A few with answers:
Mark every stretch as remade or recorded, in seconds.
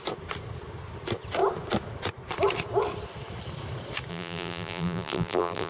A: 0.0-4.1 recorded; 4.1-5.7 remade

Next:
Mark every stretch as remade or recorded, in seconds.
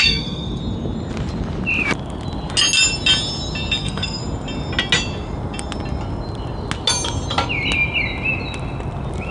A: 0.0-0.6 remade; 0.6-3.8 recorded; 3.8-4.2 remade; 4.2-9.3 recorded